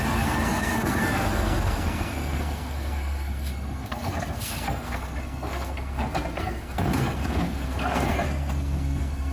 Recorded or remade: remade